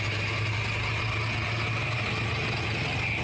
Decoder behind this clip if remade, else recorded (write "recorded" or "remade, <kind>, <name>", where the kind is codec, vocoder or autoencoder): recorded